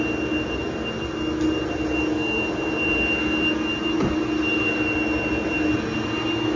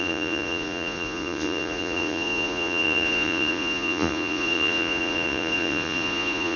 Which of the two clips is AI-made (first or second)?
second